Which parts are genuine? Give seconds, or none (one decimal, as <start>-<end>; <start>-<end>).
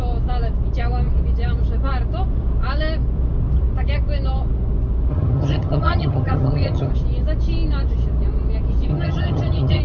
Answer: 0.0-5.1; 6.9-8.9